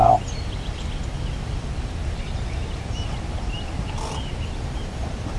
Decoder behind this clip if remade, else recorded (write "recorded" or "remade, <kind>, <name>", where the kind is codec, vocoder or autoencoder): recorded